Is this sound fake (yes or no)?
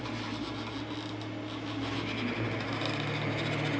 no